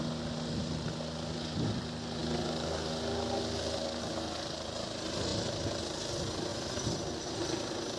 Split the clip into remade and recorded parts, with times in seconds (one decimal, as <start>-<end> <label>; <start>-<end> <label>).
0.0-5.3 recorded; 5.3-5.8 remade; 5.8-6.5 recorded; 6.5-7.2 remade; 7.2-8.0 recorded

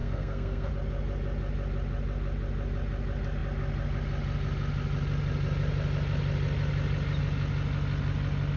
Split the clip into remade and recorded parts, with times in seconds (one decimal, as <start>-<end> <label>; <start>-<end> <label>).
0.0-0.7 remade; 0.7-8.6 recorded